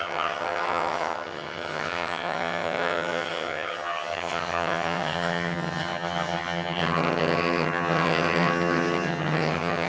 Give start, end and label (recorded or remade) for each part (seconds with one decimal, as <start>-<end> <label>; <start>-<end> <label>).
0.0-9.9 remade